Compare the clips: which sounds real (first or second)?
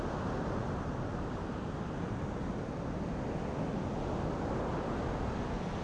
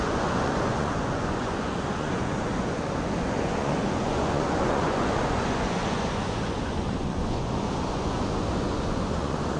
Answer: first